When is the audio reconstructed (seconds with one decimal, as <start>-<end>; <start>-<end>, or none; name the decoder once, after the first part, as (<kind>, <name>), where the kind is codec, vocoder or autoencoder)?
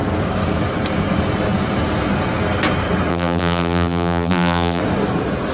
3.1-4.8 (vocoder, BigVGAN v2)